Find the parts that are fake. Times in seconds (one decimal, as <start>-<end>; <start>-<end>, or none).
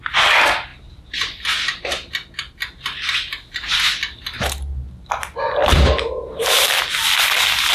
none